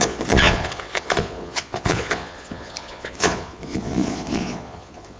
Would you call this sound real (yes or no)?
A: no